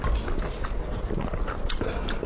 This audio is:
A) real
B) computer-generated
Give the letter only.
A